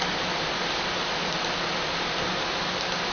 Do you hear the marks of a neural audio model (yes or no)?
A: no